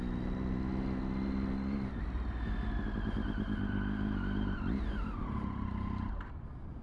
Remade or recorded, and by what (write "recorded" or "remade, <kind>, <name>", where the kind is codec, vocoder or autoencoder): recorded